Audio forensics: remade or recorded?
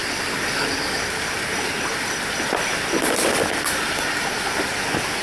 recorded